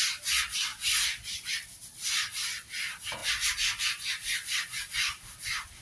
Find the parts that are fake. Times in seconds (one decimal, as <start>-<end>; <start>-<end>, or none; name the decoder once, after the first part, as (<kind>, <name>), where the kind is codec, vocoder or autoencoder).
0.7-2.1 (vocoder, BigVGAN v2)